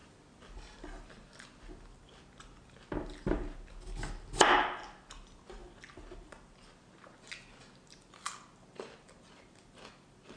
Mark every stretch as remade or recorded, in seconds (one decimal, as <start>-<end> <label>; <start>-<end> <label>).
0.0-10.4 recorded